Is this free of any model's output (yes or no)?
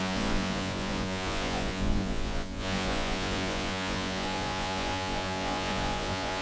no